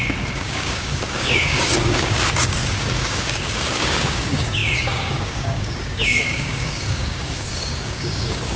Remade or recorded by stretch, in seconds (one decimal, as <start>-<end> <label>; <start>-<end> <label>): 0.0-8.6 remade